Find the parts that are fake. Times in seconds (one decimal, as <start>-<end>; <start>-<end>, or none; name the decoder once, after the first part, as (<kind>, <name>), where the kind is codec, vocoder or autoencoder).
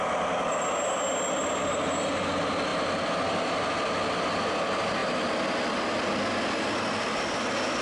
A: none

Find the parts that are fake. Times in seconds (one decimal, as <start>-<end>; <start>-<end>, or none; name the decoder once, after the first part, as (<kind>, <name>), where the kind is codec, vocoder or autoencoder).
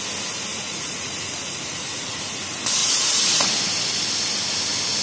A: 0.5-2.2 (vocoder, Vocos); 2.8-3.6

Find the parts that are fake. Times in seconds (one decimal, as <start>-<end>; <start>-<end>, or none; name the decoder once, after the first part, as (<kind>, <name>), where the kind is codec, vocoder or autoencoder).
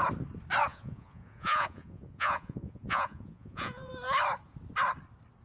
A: 0.7-3.9 (vocoder, Vocos)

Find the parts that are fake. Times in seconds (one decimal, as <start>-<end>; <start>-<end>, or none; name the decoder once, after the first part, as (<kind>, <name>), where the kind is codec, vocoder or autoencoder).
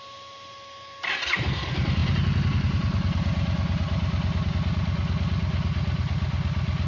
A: none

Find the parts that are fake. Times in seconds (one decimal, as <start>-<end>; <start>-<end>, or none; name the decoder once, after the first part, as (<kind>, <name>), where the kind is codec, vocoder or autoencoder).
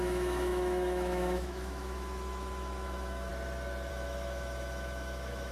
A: 0.0-3.3 (autoencoder, DAC-VAE); 3.9-5.5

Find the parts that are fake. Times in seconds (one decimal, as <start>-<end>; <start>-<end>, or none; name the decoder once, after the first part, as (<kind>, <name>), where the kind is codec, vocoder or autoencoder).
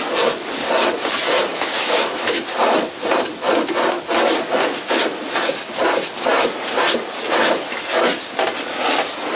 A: 1.5-2.4 (autoencoder, DAC-VAE)